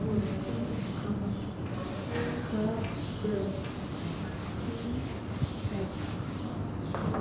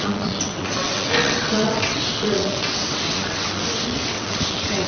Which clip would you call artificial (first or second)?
second